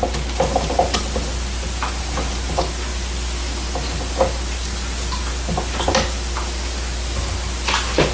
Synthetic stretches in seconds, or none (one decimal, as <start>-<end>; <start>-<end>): none